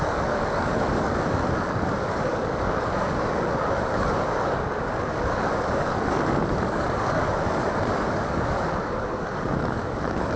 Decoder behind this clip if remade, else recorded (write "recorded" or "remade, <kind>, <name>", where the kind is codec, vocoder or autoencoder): remade, codec, DAC